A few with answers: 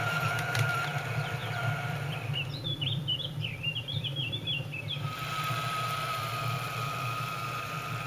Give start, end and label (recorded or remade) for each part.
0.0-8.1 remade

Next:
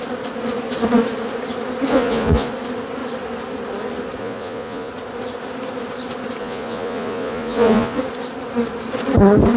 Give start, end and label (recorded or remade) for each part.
0.0-1.9 recorded; 1.9-2.5 remade; 2.5-4.2 recorded; 4.2-4.9 remade; 4.9-6.4 recorded; 6.4-8.0 remade; 8.0-9.6 recorded

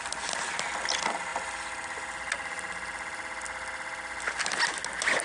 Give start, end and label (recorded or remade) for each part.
0.0-5.2 recorded

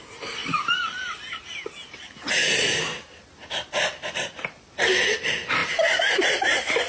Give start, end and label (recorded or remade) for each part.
0.0-5.6 recorded; 5.6-6.9 remade

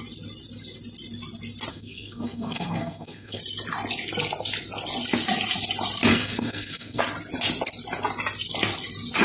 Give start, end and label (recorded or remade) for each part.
0.0-1.7 recorded; 1.7-3.4 remade; 3.4-6.1 recorded; 6.1-7.0 remade; 7.0-9.2 recorded